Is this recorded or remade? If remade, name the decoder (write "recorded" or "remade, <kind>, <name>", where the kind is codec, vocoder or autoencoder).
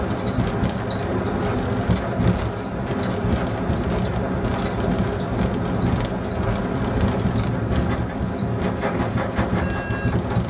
recorded